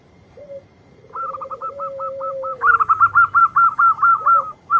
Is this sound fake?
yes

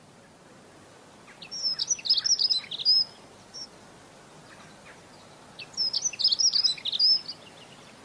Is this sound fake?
no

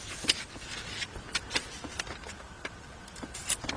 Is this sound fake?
no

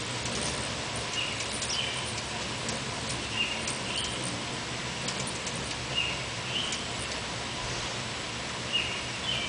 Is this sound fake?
no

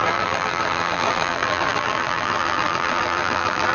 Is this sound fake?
yes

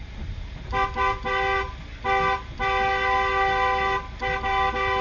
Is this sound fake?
no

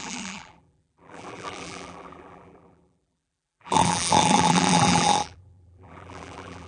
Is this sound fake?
yes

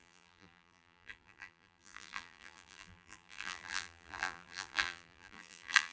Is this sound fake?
yes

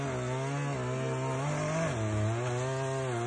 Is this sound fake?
no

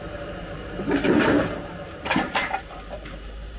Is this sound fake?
yes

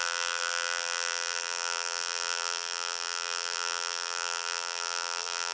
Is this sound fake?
yes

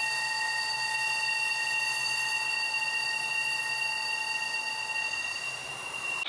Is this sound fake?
no